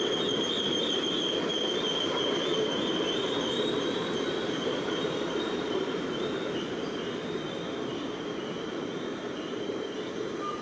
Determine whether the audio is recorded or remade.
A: remade